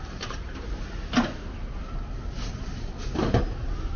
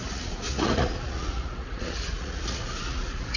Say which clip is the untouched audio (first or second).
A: first